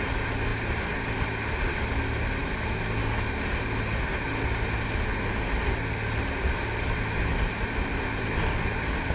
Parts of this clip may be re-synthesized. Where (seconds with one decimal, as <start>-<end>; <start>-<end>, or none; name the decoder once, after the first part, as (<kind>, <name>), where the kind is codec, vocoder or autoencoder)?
none